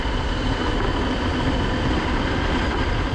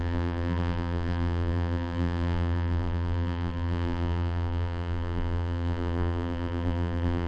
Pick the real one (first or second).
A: first